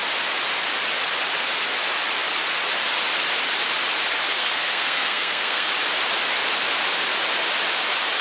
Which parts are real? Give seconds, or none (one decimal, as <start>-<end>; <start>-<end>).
0.0-4.3; 5.7-8.2